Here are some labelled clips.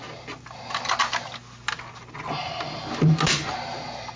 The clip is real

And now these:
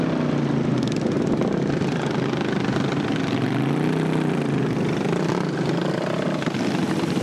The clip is real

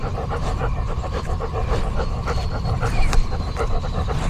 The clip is real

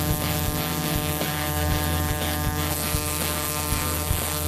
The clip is fake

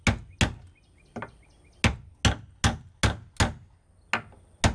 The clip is real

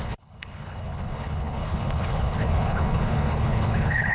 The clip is fake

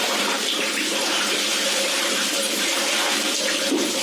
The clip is fake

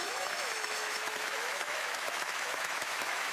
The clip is fake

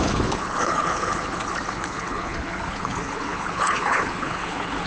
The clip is fake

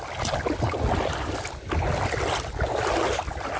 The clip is real